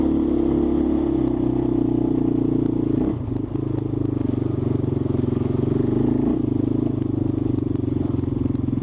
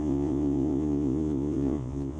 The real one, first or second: first